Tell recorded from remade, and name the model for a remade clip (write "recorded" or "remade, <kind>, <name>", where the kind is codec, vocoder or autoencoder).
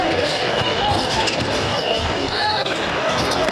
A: remade, codec, DAC